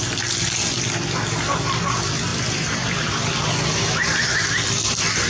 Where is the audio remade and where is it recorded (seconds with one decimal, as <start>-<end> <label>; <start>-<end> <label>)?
0.0-5.3 recorded